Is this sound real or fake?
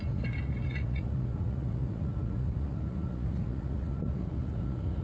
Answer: fake